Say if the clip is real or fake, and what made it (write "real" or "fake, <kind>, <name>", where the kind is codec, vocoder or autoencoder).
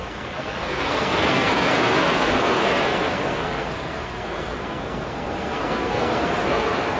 fake, codec, SNAC